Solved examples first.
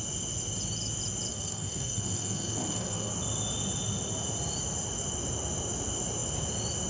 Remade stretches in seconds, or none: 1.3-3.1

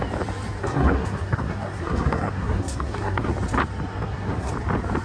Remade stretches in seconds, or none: 0.6-3.3; 3.9-4.5

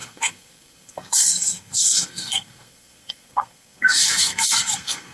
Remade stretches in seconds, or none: 0.0-5.1

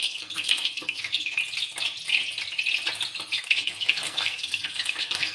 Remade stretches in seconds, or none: 0.0-1.4; 3.4-5.3

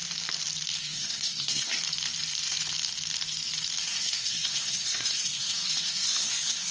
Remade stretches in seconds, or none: 0.8-1.8; 3.8-6.7